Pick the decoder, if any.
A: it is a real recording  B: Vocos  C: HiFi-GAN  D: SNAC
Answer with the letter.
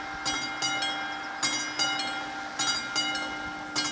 A